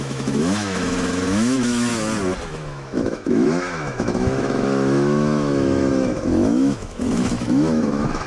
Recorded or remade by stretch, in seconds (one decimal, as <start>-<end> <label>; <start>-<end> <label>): 0.0-1.9 remade; 1.9-2.5 recorded; 2.5-8.3 remade